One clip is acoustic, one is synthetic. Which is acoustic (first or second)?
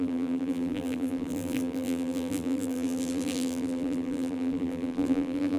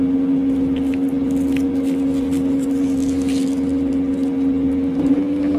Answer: second